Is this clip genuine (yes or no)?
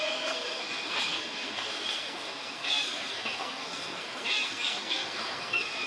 no